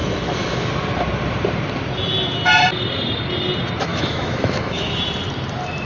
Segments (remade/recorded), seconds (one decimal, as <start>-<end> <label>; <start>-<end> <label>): 0.0-0.7 remade; 0.7-3.9 recorded; 3.9-5.0 remade; 5.0-5.9 recorded